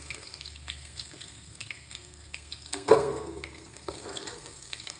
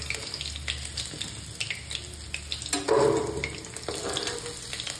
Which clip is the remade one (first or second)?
first